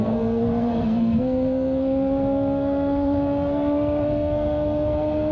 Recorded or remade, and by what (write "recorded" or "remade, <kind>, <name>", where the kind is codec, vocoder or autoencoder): remade, codec, SNAC